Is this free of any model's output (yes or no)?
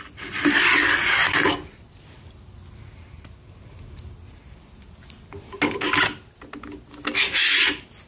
yes